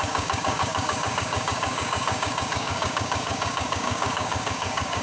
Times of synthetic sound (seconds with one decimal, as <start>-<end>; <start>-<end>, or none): 0.0-5.0